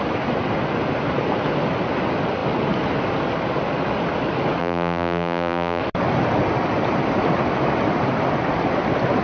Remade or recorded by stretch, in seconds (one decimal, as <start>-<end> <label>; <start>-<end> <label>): 0.0-4.6 recorded; 4.6-5.8 remade; 5.8-9.2 recorded